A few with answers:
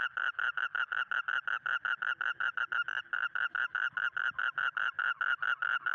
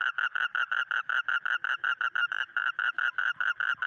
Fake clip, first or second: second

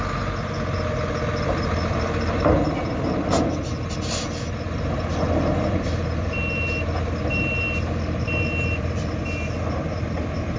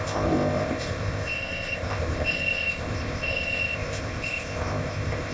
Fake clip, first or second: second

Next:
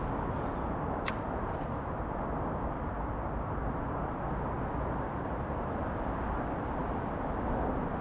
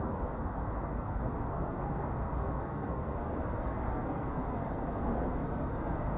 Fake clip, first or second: second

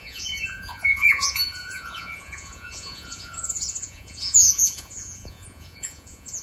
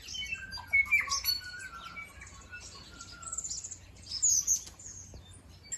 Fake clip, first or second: first